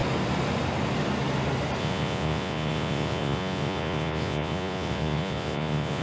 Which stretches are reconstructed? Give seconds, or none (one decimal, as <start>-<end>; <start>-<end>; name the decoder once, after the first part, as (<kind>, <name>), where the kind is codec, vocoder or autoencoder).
1.8-6.0 (vocoder, Vocos)